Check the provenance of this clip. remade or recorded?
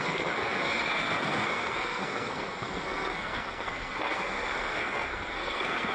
remade